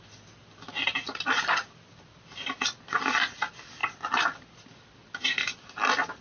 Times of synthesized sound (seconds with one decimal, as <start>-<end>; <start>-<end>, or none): none